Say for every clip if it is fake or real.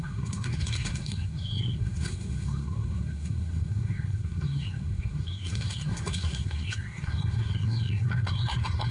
fake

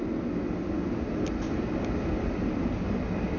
real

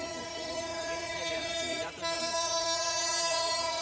fake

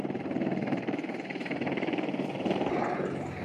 fake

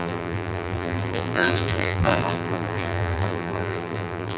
fake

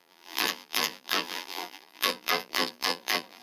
fake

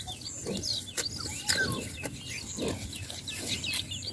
real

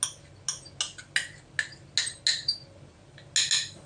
real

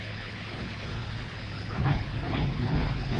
fake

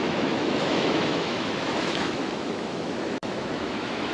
fake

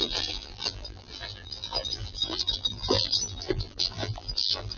fake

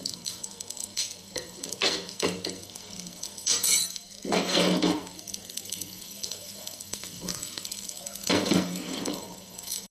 fake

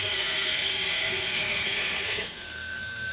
fake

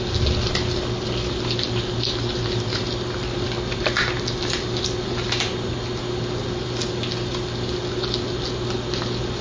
real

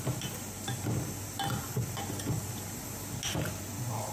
real